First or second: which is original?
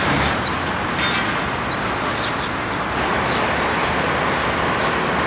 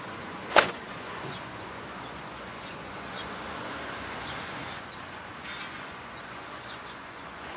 first